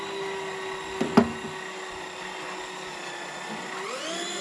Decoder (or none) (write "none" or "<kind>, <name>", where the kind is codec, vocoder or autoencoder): none